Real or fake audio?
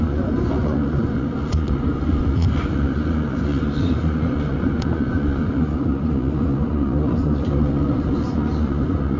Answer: fake